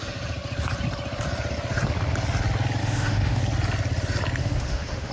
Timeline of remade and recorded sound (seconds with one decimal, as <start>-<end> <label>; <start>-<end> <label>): 0.0-2.8 recorded; 2.8-3.4 remade; 3.4-4.4 recorded; 4.4-5.1 remade